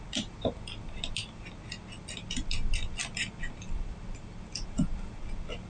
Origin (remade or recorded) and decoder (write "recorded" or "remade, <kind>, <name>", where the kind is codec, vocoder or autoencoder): recorded